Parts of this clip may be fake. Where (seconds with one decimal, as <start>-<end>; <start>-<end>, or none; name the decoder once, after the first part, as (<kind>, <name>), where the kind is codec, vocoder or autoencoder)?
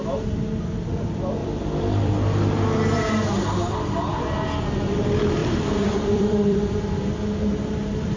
1.4-2.1 (vocoder, BigVGAN v2); 5.4-6.8